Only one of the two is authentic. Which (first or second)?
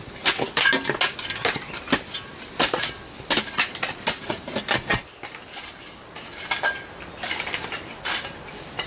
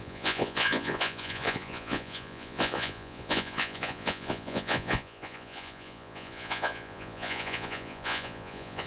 first